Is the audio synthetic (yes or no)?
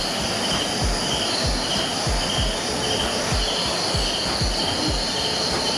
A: no